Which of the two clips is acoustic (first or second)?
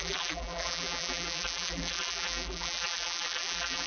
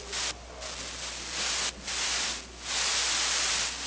second